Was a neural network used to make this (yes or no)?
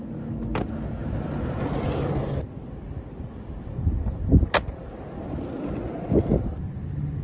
no